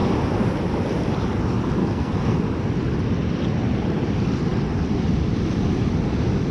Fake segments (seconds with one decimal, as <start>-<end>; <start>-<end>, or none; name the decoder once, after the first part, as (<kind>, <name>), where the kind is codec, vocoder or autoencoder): 1.8-2.4 (codec, SNAC)